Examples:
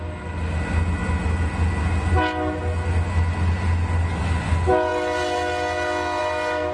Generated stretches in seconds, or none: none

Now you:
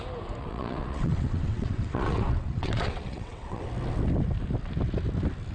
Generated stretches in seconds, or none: 0.4-3.7 (vocoder, WaveNeXt)